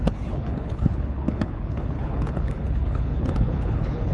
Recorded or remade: remade